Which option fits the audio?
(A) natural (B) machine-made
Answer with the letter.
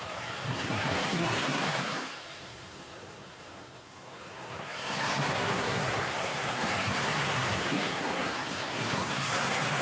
B